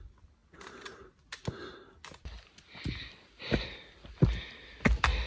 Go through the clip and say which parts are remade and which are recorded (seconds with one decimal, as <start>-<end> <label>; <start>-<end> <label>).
0.0-5.3 recorded